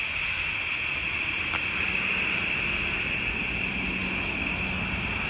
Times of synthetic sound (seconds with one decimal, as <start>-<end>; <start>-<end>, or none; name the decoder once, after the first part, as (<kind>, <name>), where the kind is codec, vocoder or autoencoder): none